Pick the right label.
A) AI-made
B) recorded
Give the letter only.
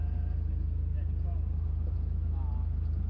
B